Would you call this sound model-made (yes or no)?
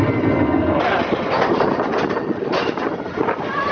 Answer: no